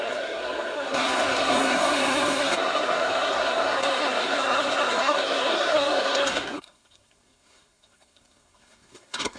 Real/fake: fake